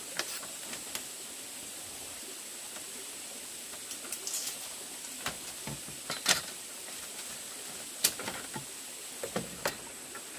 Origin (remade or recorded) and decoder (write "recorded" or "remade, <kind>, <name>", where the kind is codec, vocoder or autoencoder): recorded